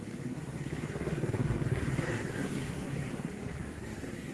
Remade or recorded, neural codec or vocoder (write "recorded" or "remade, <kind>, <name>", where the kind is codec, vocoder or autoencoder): remade, codec, SNAC